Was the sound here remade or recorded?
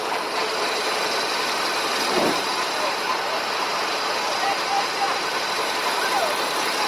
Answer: remade